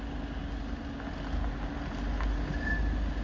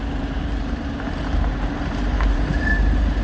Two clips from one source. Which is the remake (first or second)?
second